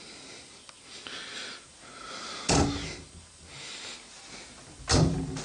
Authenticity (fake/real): real